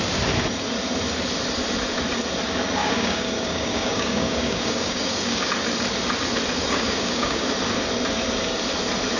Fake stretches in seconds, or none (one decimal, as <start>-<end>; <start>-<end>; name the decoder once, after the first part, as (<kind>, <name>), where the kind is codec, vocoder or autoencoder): 2.8-5.5 (codec, DAC); 6.6-7.4